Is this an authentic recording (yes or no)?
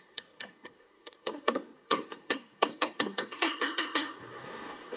no